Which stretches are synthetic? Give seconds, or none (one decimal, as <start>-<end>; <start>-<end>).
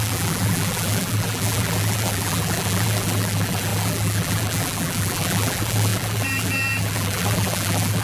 0.0-8.0